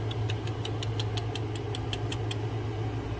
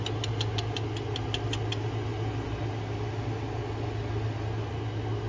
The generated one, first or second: first